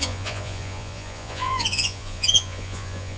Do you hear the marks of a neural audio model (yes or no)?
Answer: yes